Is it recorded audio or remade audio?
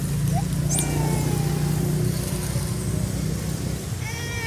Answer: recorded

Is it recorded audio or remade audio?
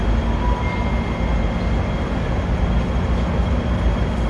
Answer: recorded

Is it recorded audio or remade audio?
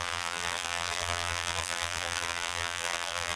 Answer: remade